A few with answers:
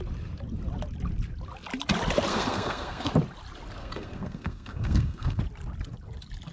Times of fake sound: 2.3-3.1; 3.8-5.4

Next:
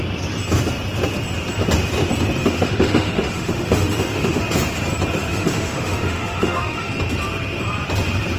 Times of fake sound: 2.4-4.4; 5.3-6.9

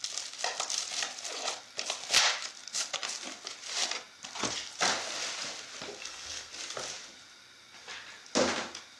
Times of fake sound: 6.0-6.5